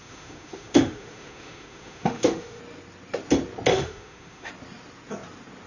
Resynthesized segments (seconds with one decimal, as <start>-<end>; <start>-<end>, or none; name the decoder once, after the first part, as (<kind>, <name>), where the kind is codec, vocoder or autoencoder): 0.0-2.6 (autoencoder, DAC-VAE); 3.7-4.5